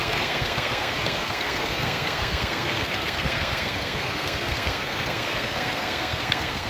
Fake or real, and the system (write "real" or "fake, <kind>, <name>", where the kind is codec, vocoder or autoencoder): fake, codec, SNAC